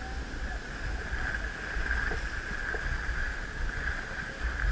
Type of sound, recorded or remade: recorded